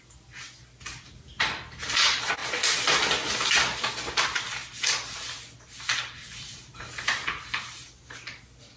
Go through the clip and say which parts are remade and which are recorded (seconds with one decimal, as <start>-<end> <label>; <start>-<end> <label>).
0.0-8.8 recorded